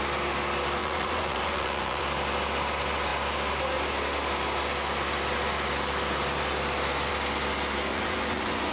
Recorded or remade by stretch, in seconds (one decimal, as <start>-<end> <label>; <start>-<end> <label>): 0.0-0.8 recorded; 0.8-2.0 remade; 2.0-7.9 recorded; 7.9-8.7 remade